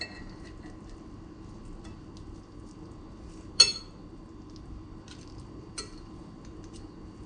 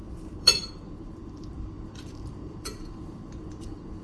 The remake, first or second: second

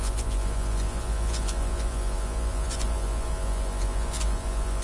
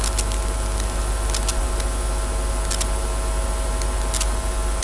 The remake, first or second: first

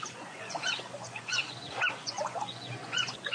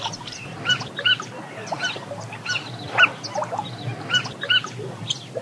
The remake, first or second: first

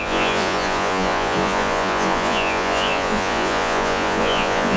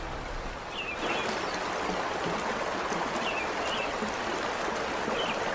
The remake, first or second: first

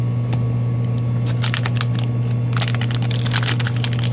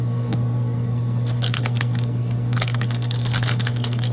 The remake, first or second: second